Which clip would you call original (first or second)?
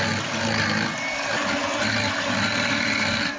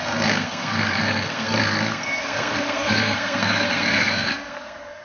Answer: first